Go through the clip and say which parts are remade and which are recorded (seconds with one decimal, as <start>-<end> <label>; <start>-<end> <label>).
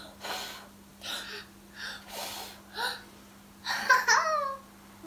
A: 0.0-5.1 recorded